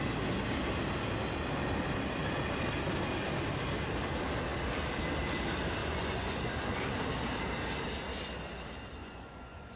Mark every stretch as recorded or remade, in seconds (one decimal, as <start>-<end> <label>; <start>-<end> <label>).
0.0-5.8 recorded; 5.8-6.5 remade; 6.5-9.0 recorded; 9.0-9.8 remade